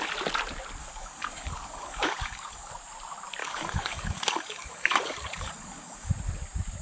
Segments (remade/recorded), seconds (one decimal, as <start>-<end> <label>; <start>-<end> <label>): 0.0-0.8 recorded; 0.8-2.7 remade; 2.7-3.4 recorded; 3.4-6.1 remade; 6.1-6.8 recorded

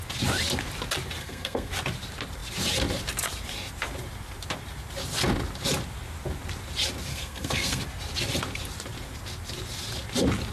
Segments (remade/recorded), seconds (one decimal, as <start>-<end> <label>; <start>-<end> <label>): 0.0-1.2 recorded; 1.2-1.7 remade; 1.7-7.1 recorded; 7.1-7.8 remade; 7.8-10.5 recorded

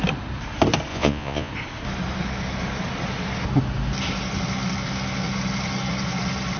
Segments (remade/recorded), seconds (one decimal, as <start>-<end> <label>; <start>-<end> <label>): 0.0-0.9 recorded; 0.9-1.5 remade; 1.5-6.6 recorded